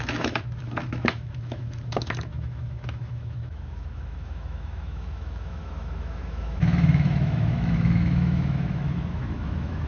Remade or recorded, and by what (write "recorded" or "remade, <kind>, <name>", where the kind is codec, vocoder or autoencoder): remade, autoencoder, DAC-VAE